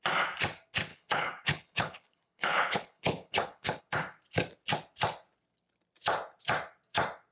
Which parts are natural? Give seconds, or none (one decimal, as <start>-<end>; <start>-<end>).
0.0-0.9; 3.8-7.3